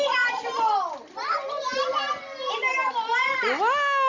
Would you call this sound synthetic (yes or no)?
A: no